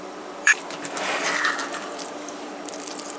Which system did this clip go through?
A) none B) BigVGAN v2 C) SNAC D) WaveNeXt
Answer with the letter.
B